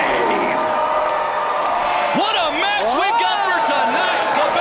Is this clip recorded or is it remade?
recorded